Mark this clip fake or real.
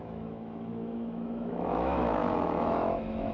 fake